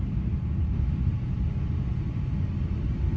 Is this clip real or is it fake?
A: real